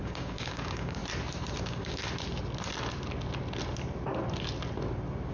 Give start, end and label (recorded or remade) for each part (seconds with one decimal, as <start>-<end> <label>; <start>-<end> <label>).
0.0-1.0 remade; 1.0-1.6 recorded; 1.6-2.0 remade; 2.0-5.3 recorded